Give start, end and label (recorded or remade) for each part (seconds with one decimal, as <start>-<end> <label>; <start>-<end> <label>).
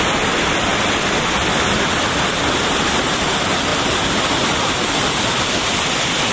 0.0-6.3 remade